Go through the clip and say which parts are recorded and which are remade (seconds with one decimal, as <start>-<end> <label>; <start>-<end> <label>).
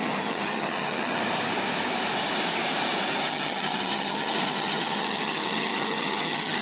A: 0.0-1.2 remade; 1.2-3.3 recorded; 3.3-6.6 remade